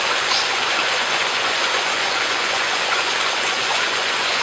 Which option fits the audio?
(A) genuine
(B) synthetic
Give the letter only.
B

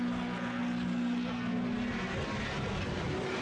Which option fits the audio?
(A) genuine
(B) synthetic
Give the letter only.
A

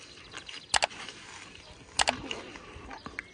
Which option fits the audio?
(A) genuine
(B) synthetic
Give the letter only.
A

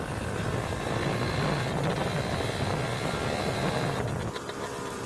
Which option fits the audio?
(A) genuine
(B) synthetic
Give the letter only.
A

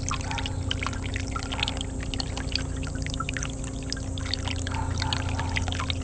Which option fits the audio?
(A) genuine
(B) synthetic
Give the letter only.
A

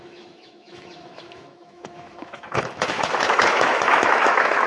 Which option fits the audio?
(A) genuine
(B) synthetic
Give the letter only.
B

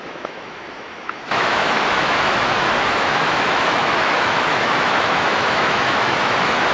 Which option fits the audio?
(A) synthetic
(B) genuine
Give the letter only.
A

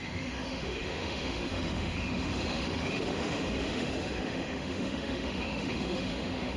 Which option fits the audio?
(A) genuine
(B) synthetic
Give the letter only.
B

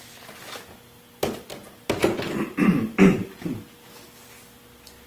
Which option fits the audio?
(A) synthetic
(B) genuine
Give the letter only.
B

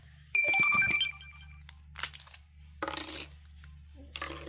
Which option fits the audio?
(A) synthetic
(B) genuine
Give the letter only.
B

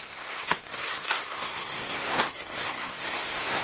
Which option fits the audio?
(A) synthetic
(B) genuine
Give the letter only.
A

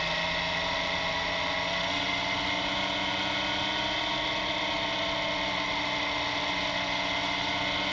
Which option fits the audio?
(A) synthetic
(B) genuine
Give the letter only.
B